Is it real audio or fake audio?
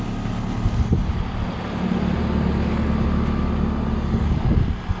real